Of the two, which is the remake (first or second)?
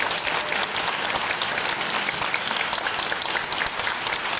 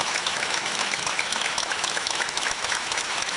second